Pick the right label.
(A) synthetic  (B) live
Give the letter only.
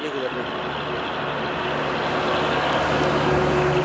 B